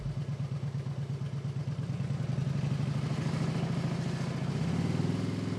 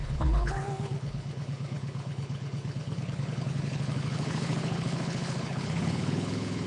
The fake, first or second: second